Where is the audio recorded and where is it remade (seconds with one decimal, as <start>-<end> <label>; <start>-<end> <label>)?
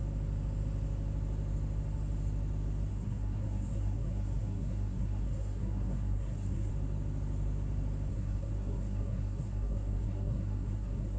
0.0-2.9 recorded; 2.9-6.7 remade; 6.7-8.1 recorded; 8.1-11.2 remade